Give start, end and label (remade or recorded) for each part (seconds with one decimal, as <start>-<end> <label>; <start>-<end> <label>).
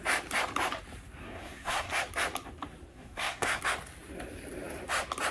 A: 0.0-1.2 recorded; 1.2-1.9 remade; 1.9-2.9 recorded; 2.9-3.6 remade; 3.6-5.3 recorded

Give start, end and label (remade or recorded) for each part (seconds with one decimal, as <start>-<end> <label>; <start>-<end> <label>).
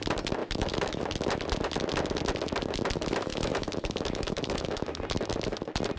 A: 0.0-0.4 recorded; 0.4-1.0 remade; 1.0-3.3 recorded; 3.3-5.0 remade; 5.0-6.0 recorded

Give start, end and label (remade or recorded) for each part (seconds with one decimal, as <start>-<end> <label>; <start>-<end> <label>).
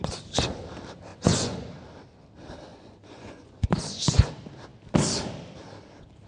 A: 0.0-1.1 recorded; 1.1-1.7 remade; 1.7-2.7 recorded; 2.7-4.3 remade; 4.3-6.3 recorded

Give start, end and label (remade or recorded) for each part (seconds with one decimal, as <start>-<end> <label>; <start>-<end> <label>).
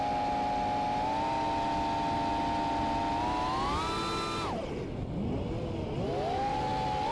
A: 0.0-7.1 recorded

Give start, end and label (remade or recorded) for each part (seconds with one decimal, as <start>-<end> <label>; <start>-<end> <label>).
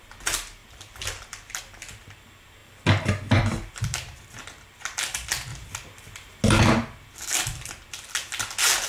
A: 0.0-0.6 recorded; 0.6-1.6 remade; 1.6-2.6 recorded; 2.6-3.3 remade; 3.3-8.9 recorded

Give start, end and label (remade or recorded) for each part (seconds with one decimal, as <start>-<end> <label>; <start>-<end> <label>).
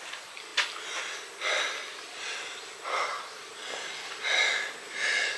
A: 0.0-5.4 recorded